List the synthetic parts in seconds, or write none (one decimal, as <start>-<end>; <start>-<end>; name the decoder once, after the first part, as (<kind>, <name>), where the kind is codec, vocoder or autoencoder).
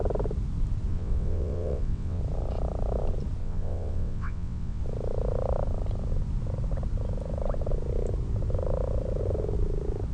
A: 0.9-2.2 (vocoder, WaveNeXt); 3.4-4.8